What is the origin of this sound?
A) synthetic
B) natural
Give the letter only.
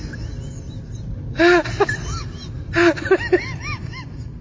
B